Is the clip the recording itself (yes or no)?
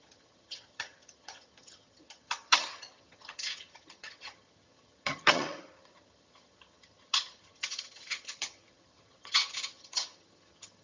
no